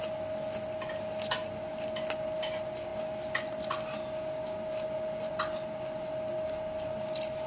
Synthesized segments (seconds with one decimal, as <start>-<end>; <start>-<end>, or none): none